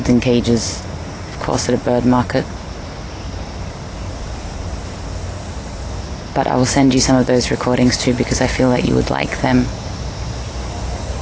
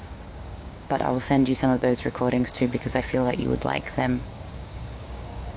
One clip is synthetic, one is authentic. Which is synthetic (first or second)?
second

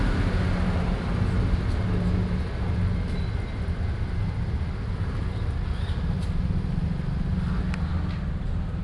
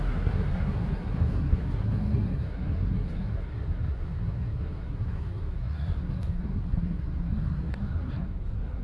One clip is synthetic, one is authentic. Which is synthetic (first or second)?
second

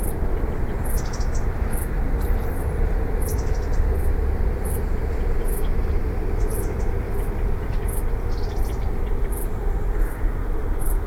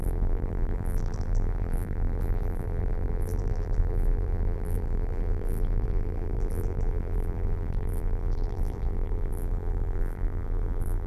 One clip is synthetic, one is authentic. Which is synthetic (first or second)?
second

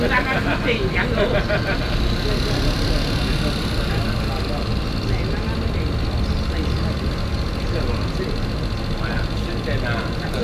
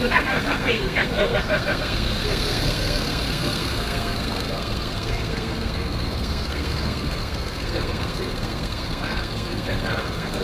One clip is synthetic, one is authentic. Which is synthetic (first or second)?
second